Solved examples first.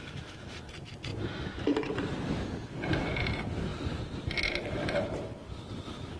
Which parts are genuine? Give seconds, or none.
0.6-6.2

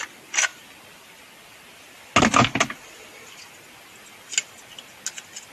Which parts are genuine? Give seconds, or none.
0.0-5.5

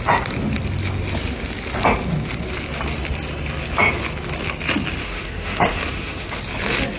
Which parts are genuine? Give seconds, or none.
0.0-5.0; 6.4-7.0

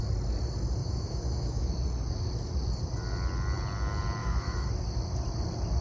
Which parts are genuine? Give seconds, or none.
0.0-0.8; 1.7-4.2; 4.7-5.8

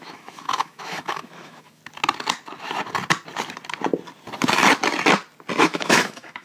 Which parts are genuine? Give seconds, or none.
1.8-5.6

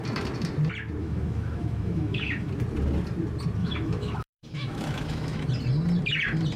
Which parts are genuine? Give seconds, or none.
0.0-1.0; 2.5-3.6; 5.5-6.6

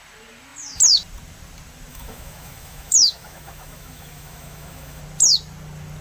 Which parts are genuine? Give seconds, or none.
0.0-1.9; 5.0-6.0

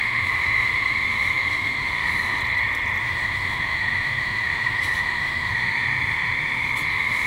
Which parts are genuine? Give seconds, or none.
2.4-3.0